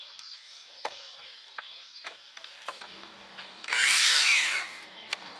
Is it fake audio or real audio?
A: fake